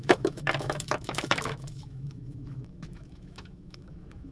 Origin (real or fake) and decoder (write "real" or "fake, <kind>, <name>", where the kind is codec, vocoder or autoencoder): fake, autoencoder, DAC-VAE